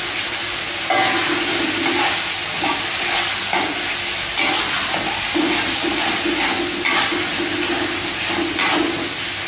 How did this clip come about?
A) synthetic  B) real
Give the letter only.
B